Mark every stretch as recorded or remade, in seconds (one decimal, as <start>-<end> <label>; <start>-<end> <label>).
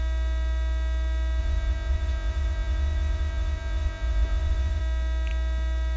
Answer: 0.0-1.4 recorded; 1.4-4.8 remade; 4.8-6.0 recorded